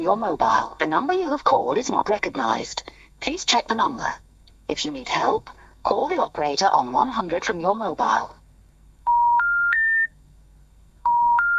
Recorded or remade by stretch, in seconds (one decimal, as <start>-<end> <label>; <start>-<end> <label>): 0.0-11.6 remade